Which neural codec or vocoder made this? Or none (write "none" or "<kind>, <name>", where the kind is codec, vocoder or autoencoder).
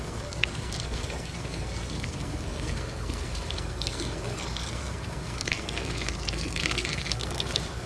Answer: codec, SNAC